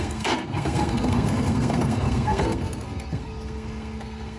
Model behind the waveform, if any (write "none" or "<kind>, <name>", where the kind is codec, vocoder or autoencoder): codec, SNAC